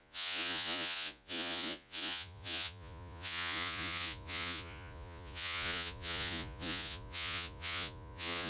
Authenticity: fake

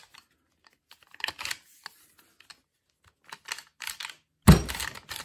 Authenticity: real